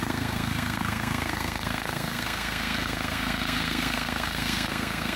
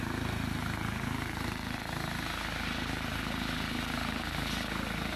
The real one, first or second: second